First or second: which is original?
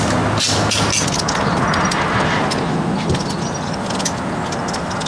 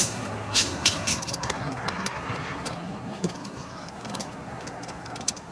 first